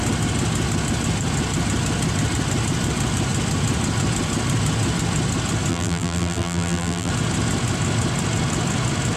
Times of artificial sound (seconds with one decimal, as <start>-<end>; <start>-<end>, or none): 5.7-7.1